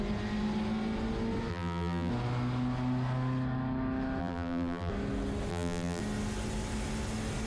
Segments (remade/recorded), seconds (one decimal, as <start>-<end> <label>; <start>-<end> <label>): 0.0-1.5 recorded; 1.5-2.1 remade; 2.1-4.2 recorded; 4.2-4.9 remade; 4.9-5.5 recorded; 5.5-6.0 remade; 6.0-7.5 recorded